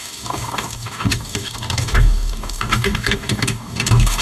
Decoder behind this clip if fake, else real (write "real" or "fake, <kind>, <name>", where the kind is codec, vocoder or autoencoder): fake, codec, DAC